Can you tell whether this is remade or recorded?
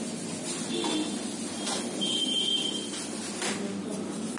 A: recorded